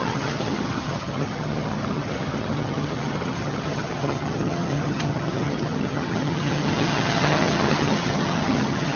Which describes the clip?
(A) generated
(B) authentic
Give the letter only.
A